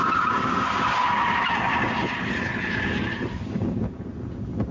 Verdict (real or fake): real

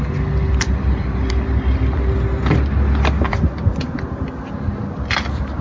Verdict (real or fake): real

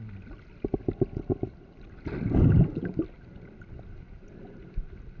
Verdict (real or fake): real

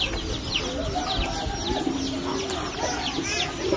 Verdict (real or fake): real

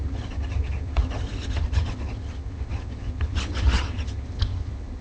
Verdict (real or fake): fake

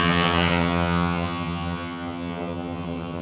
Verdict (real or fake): fake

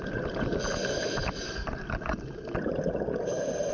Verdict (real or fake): real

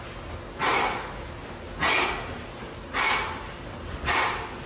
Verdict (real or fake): real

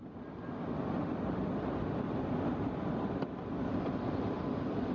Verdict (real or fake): real